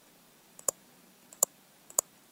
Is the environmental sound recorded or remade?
remade